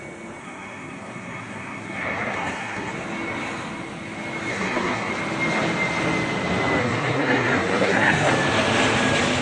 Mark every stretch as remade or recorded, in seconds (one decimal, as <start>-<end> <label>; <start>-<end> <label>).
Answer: 0.0-0.4 recorded; 0.4-2.9 remade; 2.9-4.5 recorded; 4.5-5.1 remade; 5.1-6.8 recorded; 6.8-8.3 remade; 8.3-9.4 recorded